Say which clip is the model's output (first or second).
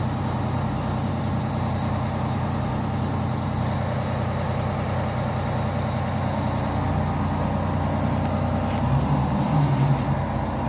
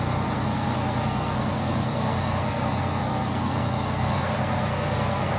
second